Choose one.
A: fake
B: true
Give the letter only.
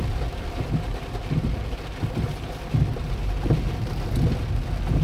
B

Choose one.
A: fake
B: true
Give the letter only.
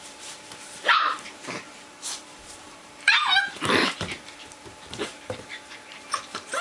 A